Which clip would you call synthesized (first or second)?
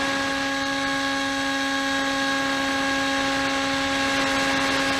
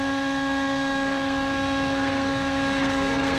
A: second